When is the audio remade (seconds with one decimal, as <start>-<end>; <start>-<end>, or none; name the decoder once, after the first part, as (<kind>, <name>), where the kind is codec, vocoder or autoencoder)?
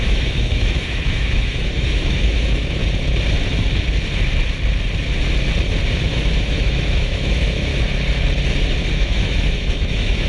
0.0-2.8 (autoencoder, DAC-VAE); 6.0-7.7; 8.9-10.3